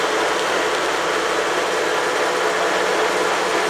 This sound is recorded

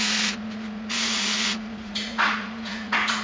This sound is remade